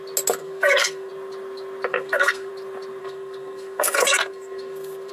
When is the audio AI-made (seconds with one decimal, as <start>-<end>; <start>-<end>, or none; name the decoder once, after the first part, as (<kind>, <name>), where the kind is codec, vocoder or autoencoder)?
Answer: 0.4-1.1 (codec, SNAC); 1.9-2.5; 3.0-5.1